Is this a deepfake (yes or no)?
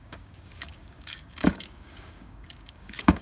yes